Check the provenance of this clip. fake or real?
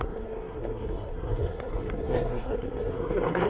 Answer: fake